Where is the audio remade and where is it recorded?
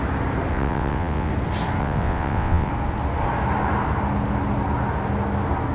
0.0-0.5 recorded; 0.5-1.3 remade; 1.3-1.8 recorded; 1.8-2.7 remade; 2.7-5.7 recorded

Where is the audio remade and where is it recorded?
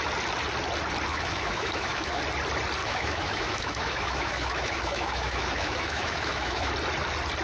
0.0-1.1 recorded; 1.1-2.2 remade; 2.2-2.8 recorded; 2.8-6.7 remade; 6.7-7.4 recorded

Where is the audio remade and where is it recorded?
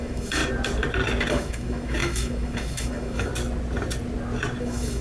0.0-0.4 remade; 0.4-1.3 recorded; 1.3-3.3 remade; 3.3-4.6 recorded; 4.6-5.0 remade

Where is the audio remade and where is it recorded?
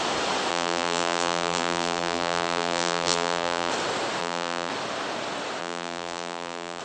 0.0-0.5 recorded; 0.5-3.7 remade; 3.7-4.2 recorded; 4.2-4.7 remade; 4.7-5.6 recorded; 5.6-6.8 remade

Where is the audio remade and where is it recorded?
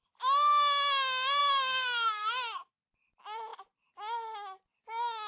0.0-1.4 recorded; 1.4-2.7 remade; 2.7-5.3 recorded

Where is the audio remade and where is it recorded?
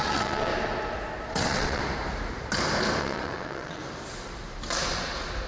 0.0-0.5 remade; 0.5-1.3 recorded; 1.3-1.8 remade; 1.8-3.0 recorded; 3.0-3.8 remade; 3.8-5.5 recorded